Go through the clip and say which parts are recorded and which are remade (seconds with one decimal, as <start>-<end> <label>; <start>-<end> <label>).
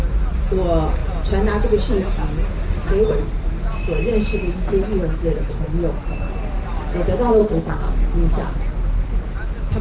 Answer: 0.0-7.4 recorded; 7.4-7.9 remade; 7.9-9.8 recorded